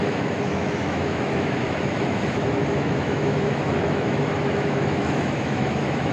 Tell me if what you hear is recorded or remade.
remade